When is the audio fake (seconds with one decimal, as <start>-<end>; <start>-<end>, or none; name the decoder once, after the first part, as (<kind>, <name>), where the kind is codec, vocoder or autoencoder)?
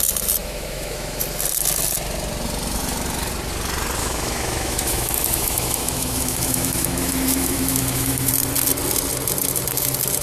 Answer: 0.4-1.2 (autoencoder, DAC-VAE); 4.0-8.3